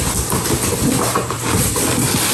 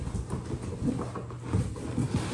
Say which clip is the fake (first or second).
first